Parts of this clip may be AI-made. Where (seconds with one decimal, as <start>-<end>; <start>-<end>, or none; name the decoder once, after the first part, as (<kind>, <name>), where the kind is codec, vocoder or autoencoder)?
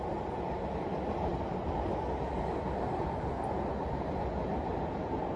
none